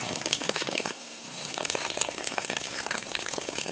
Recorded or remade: remade